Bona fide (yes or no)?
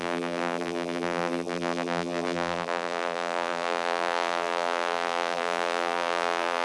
no